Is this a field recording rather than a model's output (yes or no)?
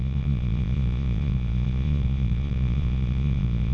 no